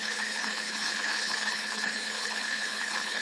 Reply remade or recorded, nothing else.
remade